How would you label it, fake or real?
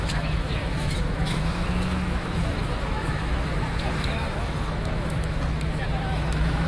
fake